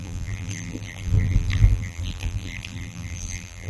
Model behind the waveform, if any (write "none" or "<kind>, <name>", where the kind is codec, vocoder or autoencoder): vocoder, BigVGAN v2